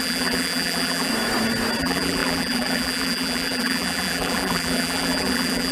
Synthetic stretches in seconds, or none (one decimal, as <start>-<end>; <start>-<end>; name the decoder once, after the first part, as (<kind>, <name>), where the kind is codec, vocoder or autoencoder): 0.0-1.1 (vocoder, BigVGAN v2); 1.8-5.7